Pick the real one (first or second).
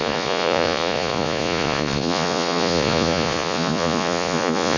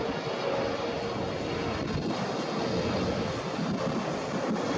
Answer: second